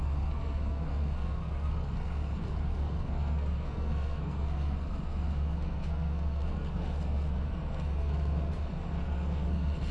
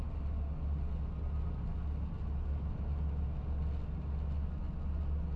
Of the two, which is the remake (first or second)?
first